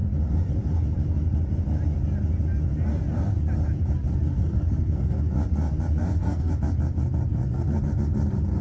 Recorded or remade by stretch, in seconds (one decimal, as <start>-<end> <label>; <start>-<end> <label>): 0.0-4.3 recorded; 4.3-5.2 remade; 5.2-6.0 recorded; 6.0-6.5 remade; 6.5-7.3 recorded; 7.3-7.8 remade; 7.8-8.6 recorded